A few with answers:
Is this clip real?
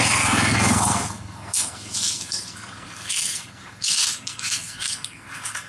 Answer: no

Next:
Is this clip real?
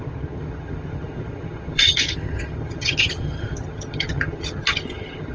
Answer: no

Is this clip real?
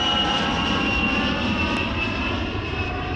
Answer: no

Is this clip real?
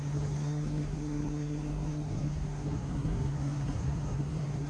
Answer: no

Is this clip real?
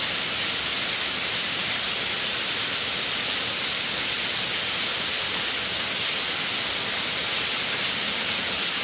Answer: yes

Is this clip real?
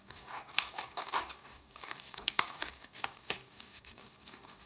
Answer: no